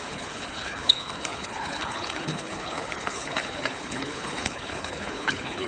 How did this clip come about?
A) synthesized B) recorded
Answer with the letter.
A